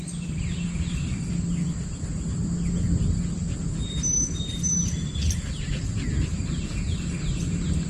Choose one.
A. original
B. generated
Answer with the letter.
A